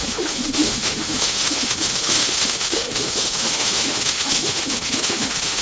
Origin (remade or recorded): remade